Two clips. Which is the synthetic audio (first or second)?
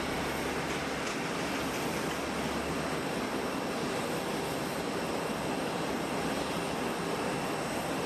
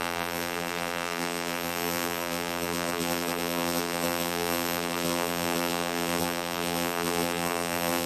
second